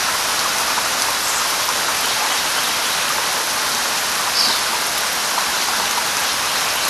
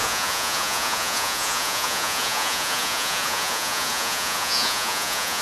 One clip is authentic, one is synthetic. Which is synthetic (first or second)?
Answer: second